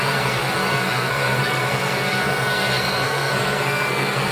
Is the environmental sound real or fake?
fake